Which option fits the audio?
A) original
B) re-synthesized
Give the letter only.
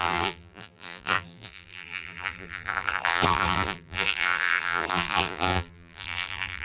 B